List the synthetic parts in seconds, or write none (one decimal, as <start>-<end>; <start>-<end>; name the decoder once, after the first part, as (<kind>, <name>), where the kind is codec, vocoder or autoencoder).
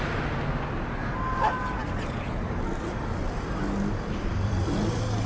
1.8-5.3 (vocoder, BigVGAN v2)